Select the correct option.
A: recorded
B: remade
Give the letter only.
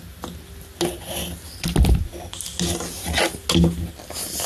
A